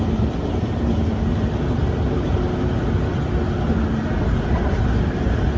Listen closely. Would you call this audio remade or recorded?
recorded